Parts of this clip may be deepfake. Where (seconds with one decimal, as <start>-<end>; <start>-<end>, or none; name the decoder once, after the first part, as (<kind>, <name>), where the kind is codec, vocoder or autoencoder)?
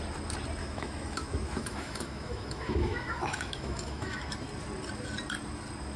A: 0.6-4.2 (autoencoder, DAC-VAE)